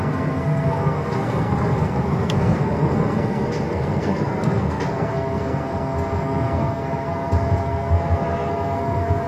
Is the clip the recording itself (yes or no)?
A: no